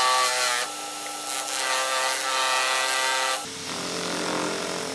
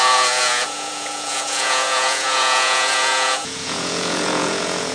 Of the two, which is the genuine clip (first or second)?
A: first